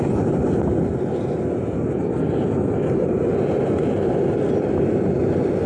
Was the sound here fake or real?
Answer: real